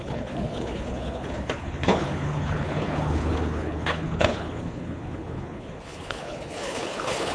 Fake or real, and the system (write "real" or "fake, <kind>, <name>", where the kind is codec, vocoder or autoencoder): fake, codec, HILCodec